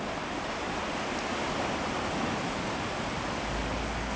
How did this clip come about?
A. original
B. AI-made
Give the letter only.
A